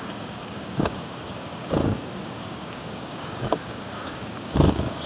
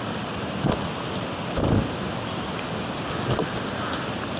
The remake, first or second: first